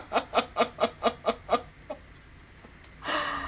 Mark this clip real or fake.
real